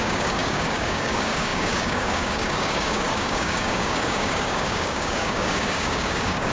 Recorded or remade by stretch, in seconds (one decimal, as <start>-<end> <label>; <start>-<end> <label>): 0.0-6.5 remade